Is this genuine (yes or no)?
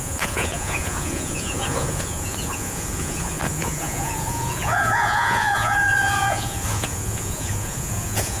no